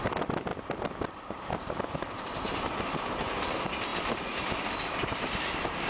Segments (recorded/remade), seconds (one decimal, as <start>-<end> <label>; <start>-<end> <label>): 0.0-5.9 recorded